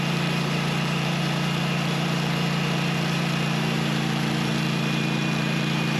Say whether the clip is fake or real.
fake